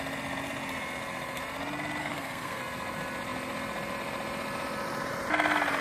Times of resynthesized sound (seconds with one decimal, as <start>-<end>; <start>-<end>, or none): 2.0-2.6